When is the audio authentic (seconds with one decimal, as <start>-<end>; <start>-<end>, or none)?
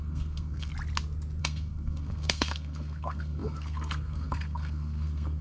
0.7-1.4